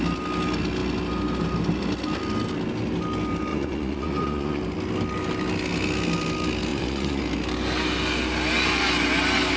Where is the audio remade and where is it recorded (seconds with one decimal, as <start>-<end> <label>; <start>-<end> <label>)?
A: 0.0-3.5 recorded; 3.5-4.6 remade; 4.6-6.7 recorded; 6.7-7.2 remade; 7.2-9.6 recorded